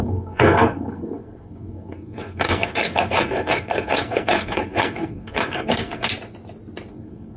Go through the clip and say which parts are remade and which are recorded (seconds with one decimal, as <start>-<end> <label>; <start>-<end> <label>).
0.0-6.1 remade; 6.1-6.9 recorded; 6.9-7.4 remade